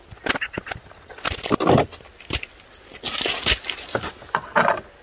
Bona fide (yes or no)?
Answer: yes